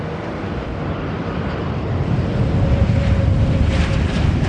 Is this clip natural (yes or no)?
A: no